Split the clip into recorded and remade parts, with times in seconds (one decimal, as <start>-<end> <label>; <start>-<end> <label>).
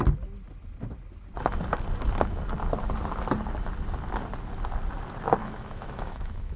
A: 0.0-5.4 recorded; 5.4-6.6 remade